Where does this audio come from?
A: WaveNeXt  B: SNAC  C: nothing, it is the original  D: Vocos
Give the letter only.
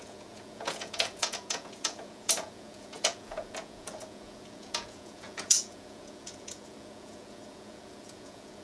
D